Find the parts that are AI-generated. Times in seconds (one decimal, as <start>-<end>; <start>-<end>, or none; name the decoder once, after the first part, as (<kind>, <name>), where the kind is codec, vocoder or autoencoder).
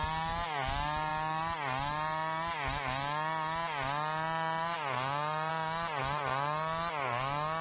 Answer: none